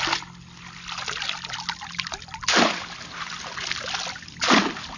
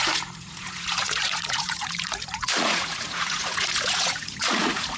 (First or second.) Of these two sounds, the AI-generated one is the second